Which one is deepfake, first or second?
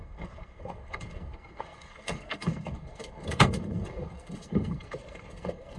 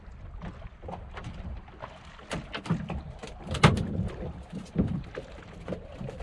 first